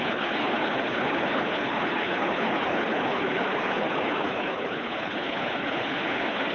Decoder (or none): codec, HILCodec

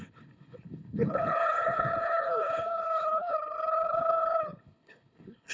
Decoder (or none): codec, HILCodec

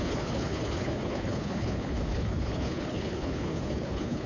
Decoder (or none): codec, HILCodec